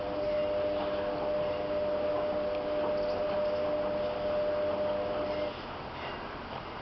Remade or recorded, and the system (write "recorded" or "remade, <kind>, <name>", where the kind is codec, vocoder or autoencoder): recorded